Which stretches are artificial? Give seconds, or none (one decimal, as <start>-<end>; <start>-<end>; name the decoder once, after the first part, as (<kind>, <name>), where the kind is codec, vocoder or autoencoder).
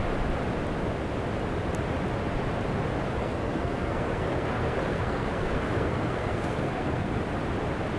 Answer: 3.2-7.2 (codec, SNAC)